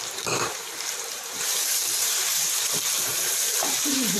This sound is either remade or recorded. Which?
remade